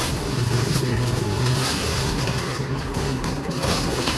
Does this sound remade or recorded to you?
remade